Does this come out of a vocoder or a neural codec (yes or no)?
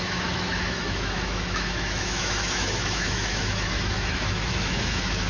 yes